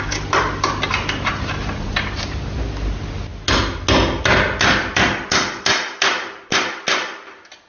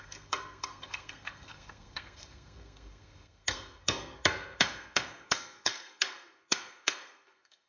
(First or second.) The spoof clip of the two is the second